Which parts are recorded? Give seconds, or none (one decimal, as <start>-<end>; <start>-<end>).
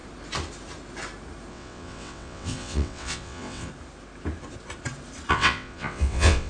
0.0-1.5; 3.7-5.3